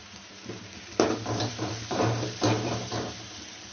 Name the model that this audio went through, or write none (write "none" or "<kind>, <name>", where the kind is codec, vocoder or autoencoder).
vocoder, BigVGAN v2